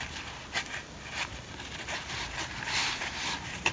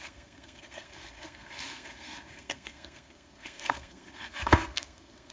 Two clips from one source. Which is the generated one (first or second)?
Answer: second